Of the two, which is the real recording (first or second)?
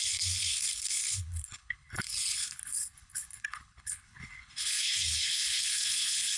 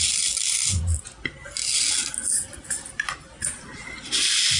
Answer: second